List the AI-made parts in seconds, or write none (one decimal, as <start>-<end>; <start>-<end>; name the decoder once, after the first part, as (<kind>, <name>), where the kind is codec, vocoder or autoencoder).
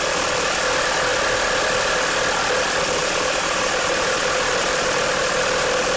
3.0-5.4 (vocoder, BigVGAN v2)